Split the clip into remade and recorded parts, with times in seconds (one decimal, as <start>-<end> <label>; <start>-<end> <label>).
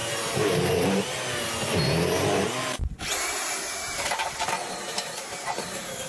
0.0-0.6 remade; 0.6-2.8 recorded; 2.8-4.2 remade; 4.2-4.9 recorded; 4.9-6.1 remade